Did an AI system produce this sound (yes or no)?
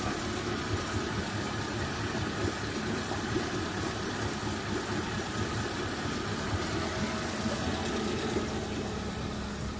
no